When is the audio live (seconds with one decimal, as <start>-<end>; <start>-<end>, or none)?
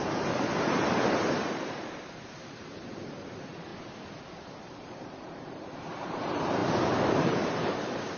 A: 3.7-4.3; 6.6-7.4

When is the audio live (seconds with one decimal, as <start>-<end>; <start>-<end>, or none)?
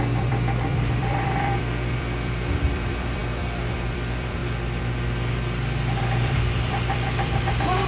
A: 3.2-3.9; 4.4-6.0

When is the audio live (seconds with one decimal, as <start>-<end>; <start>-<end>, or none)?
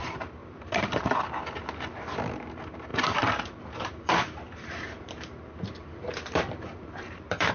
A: 0.0-0.4; 1.2-2.9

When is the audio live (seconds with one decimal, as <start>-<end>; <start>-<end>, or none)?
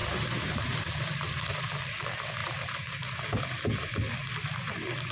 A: 0.8-2.4; 3.2-5.1